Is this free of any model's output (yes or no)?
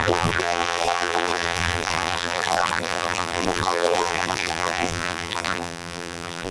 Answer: no